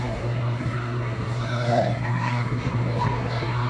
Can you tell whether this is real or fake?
fake